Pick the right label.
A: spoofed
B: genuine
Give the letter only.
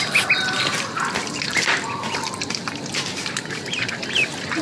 A